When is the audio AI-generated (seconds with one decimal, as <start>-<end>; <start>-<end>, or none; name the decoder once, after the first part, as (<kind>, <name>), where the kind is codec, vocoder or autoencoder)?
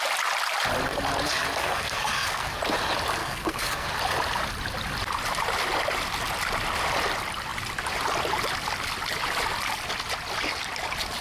1.6-2.6 (codec, SNAC); 3.2-3.9